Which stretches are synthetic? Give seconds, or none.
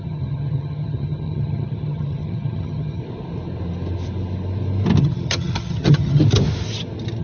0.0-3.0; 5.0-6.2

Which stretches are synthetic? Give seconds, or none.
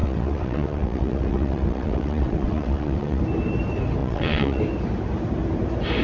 0.0-3.2; 4.0-4.6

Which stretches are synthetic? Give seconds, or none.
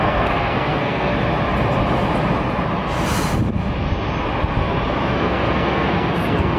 0.0-1.1; 5.1-6.6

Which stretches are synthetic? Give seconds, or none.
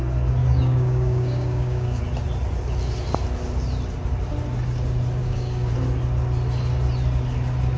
0.4-2.0; 5.2-5.7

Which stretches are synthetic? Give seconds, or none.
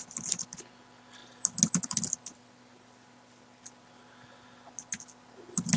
none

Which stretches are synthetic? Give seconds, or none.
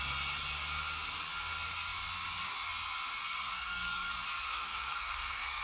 3.2-4.1; 4.5-5.6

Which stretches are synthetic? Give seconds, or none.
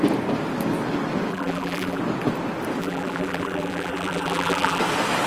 1.3-2.0; 2.8-4.8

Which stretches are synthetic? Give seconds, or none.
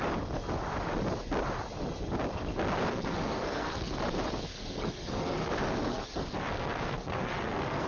2.9-4.0; 4.5-5.5; 5.9-7.9